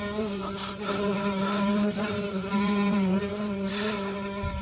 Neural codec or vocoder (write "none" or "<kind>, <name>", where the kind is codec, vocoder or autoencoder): vocoder, BigVGAN v2